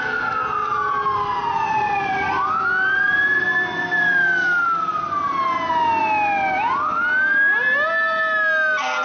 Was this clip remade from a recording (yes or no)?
no